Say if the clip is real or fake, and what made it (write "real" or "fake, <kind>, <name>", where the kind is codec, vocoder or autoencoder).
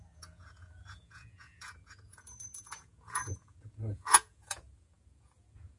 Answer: fake, vocoder, Vocos